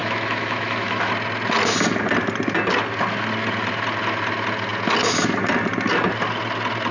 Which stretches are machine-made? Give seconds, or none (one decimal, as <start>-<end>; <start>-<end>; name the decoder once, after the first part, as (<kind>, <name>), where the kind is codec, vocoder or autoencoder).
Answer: 0.0-1.1 (autoencoder, DAC-VAE)